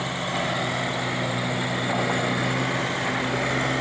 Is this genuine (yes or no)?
yes